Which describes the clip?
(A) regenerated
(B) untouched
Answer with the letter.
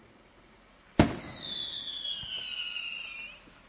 B